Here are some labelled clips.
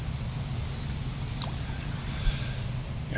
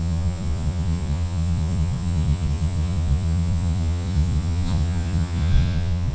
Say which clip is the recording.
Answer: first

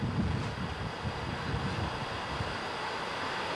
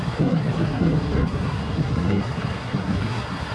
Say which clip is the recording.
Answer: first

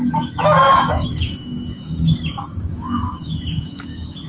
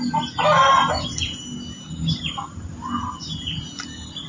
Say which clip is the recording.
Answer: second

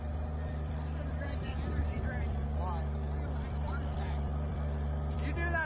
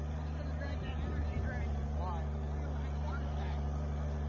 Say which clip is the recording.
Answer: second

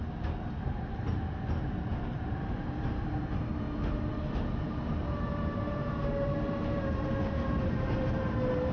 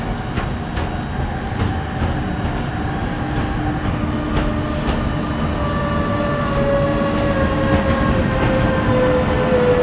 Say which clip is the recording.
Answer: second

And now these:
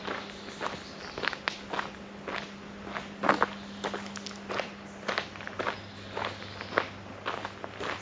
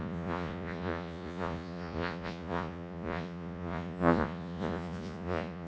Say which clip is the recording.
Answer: first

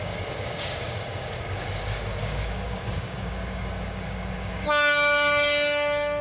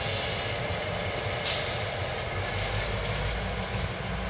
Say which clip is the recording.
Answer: second